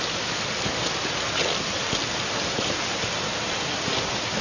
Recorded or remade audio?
recorded